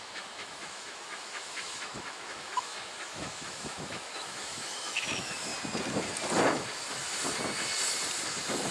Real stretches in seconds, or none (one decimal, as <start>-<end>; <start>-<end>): 5.5-6.5; 7.0-8.7